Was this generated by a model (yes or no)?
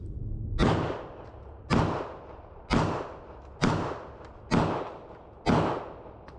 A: no